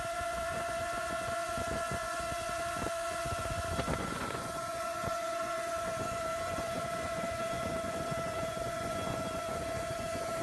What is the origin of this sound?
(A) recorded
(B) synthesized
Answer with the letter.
B